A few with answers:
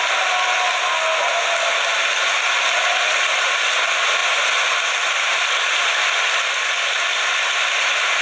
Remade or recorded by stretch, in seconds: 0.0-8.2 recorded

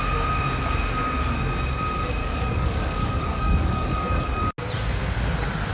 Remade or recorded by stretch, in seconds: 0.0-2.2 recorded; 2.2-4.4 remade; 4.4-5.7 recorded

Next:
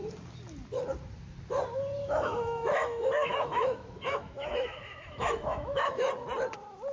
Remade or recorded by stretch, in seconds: 0.0-2.0 recorded; 2.0-6.1 remade; 6.1-6.9 recorded